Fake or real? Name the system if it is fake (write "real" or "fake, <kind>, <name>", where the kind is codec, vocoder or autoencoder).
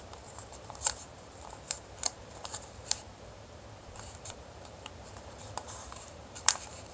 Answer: fake, vocoder, BigVGAN v2